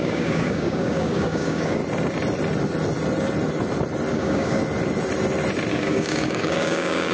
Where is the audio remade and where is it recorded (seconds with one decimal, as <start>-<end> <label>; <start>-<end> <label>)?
0.0-1.8 remade; 1.8-4.1 recorded; 4.1-4.6 remade; 4.6-5.7 recorded; 5.7-7.1 remade